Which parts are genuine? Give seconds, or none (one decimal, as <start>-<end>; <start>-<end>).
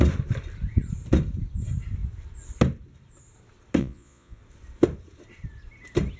0.0-3.8; 4.4-6.2